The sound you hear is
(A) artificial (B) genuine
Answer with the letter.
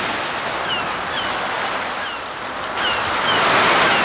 B